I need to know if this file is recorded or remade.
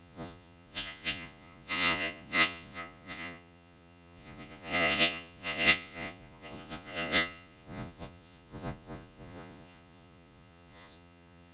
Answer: remade